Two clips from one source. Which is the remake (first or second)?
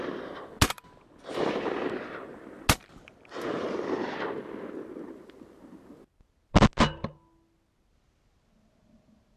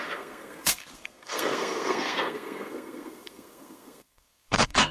second